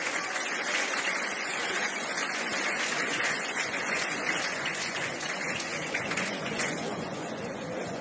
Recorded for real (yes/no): no